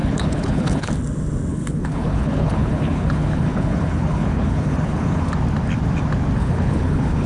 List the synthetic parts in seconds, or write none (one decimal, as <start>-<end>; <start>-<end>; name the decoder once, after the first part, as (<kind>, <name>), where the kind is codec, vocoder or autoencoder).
0.0-0.9 (codec, HILCodec); 1.5-5.3; 6.4-7.3